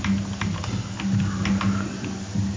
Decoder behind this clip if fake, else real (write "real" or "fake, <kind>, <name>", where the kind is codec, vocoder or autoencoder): real